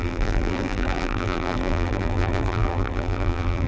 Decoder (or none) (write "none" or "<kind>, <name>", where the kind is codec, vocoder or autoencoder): vocoder, BigVGAN v2